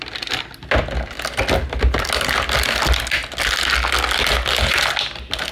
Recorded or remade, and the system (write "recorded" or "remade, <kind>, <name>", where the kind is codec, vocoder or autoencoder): recorded